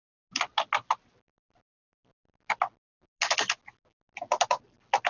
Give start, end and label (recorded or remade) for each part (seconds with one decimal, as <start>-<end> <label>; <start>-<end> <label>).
0.0-5.1 recorded